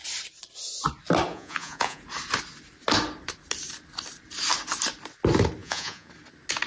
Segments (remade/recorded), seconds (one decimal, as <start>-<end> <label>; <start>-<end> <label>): 0.0-1.3 recorded; 1.3-2.0 remade; 2.0-5.6 recorded; 5.6-6.1 remade; 6.1-6.7 recorded

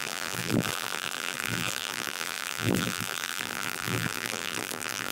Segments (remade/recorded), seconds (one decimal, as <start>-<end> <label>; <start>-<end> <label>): 0.0-5.1 remade

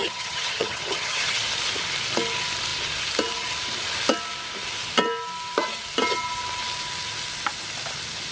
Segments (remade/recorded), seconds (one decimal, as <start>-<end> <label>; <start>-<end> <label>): 0.0-1.4 remade; 1.4-8.3 recorded

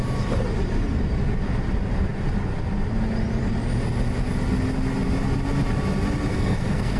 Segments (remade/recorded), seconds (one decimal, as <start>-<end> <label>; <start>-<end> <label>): 0.0-6.3 recorded; 6.3-7.0 remade

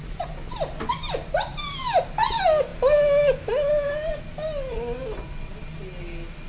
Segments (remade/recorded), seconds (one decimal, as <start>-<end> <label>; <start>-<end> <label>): 0.0-6.5 recorded

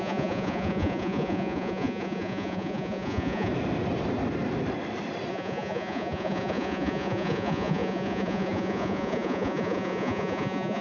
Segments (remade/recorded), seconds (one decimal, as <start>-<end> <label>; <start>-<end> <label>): 0.0-3.5 remade; 3.5-5.3 recorded; 5.3-10.8 remade